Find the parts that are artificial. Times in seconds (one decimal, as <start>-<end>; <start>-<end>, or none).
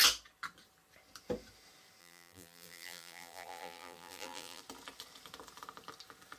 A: 2.0-4.6